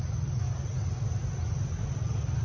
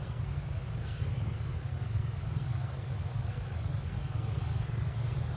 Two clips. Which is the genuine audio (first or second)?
first